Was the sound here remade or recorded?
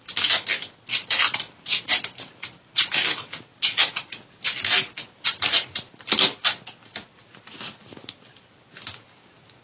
recorded